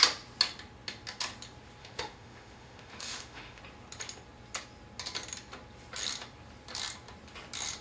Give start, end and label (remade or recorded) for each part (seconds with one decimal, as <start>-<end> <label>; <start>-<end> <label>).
0.0-1.8 recorded; 1.8-3.6 remade; 3.6-7.8 recorded